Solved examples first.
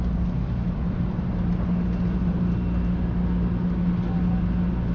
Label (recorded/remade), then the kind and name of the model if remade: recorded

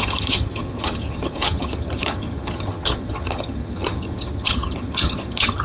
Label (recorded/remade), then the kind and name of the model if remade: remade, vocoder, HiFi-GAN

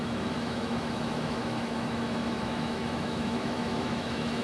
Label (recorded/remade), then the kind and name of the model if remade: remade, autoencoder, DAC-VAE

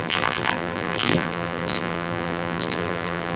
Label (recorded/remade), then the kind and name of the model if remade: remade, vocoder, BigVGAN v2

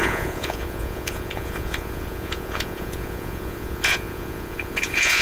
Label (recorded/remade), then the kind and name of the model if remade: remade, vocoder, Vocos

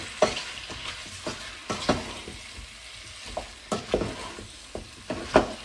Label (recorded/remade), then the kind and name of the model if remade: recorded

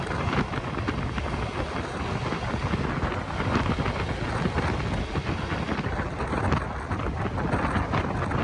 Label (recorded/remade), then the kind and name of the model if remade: recorded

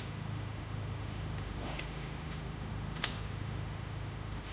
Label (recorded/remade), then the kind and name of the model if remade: remade, autoencoder, DAC-VAE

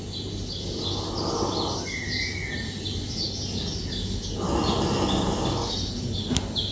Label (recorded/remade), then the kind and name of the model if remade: recorded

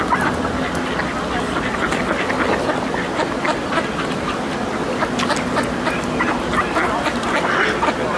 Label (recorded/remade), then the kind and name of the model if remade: recorded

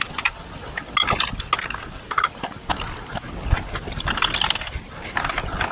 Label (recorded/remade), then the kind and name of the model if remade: recorded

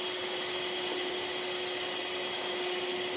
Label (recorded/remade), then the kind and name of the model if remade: recorded